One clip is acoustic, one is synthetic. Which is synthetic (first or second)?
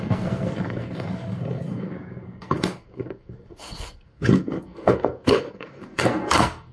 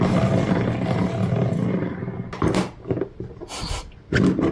first